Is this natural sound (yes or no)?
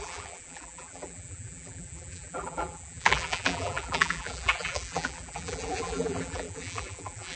no